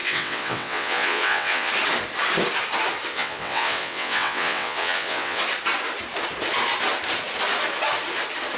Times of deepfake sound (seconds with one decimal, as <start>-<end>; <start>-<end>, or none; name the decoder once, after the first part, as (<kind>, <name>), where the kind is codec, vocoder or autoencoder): 0.0-1.7 (vocoder, WaveNeXt); 3.1-5.4